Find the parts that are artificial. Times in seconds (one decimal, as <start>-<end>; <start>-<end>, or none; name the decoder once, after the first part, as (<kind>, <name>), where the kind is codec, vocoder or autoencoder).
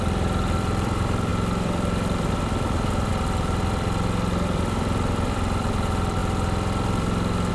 0.0-7.5 (vocoder, BigVGAN v2)